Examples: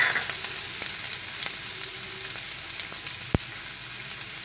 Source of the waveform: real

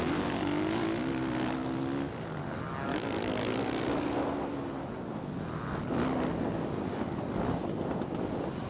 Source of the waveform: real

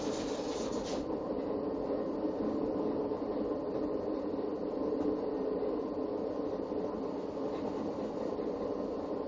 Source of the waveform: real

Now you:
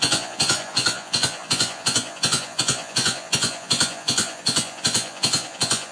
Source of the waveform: fake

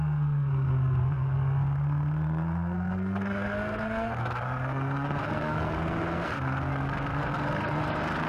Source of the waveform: fake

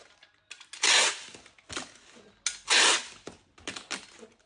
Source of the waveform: real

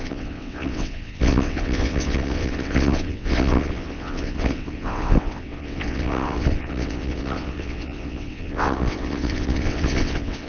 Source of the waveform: fake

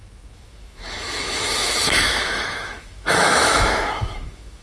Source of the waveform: fake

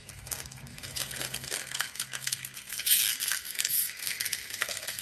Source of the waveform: fake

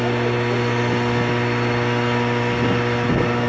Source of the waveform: real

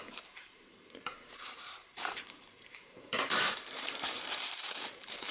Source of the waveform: fake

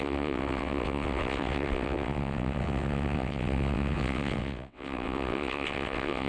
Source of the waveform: fake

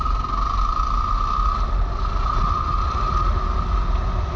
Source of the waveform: real